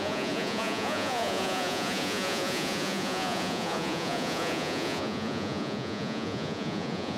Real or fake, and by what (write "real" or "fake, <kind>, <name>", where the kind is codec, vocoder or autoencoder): fake, vocoder, Vocos